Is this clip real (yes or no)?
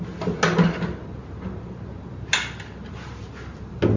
yes